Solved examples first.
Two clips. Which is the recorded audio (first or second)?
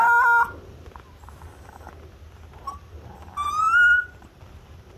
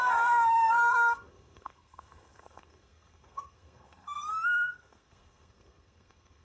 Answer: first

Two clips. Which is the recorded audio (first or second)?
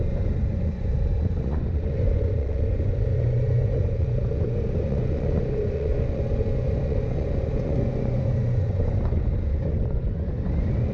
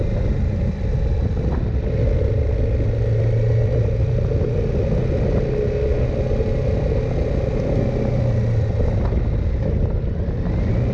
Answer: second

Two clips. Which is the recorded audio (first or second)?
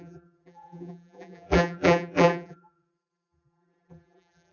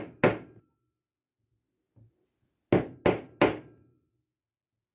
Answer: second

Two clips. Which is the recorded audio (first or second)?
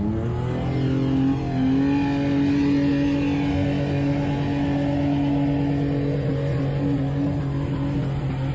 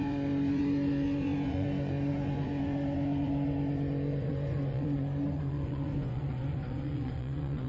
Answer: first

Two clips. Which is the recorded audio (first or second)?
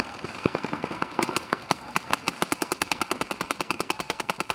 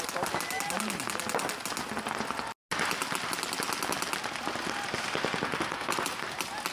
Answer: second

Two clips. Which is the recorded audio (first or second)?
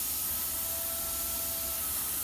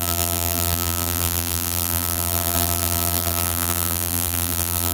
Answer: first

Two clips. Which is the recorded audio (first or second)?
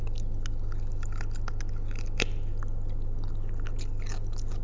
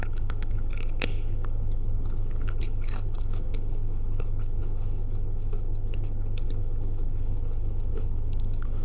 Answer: first